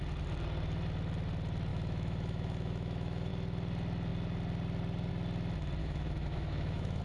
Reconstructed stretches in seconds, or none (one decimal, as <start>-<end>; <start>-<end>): 1.7-3.3; 5.8-7.0